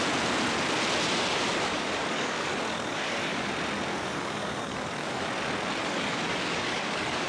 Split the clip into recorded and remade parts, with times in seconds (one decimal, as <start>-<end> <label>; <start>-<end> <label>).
0.0-1.7 recorded; 1.7-3.5 remade; 3.5-3.9 recorded; 3.9-5.3 remade; 5.3-5.8 recorded; 5.8-7.3 remade

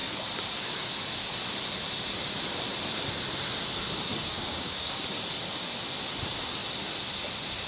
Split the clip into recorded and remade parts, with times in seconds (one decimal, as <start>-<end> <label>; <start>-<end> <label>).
0.0-4.1 recorded; 4.1-4.9 remade; 4.9-7.7 recorded

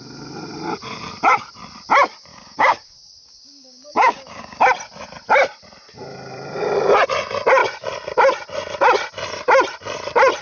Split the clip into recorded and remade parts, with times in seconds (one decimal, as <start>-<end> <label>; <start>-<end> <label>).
0.0-2.3 recorded; 2.3-4.6 remade; 4.6-10.4 recorded

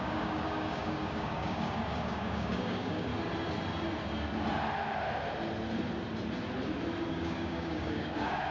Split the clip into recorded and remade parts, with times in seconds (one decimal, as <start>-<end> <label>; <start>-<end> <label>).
0.0-3.1 remade; 3.1-7.1 recorded; 7.1-8.5 remade

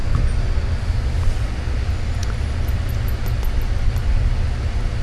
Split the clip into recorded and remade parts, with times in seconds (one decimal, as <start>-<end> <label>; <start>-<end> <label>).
0.0-5.0 recorded

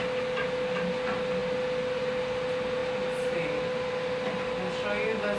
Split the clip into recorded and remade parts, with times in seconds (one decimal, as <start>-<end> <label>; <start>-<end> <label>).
0.0-5.4 recorded